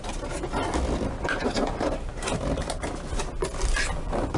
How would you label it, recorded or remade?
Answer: remade